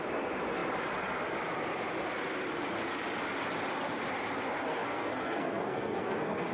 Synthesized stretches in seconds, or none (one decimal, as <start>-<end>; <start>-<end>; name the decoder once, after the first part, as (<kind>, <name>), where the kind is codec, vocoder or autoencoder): 4.7-6.5 (codec, SNAC)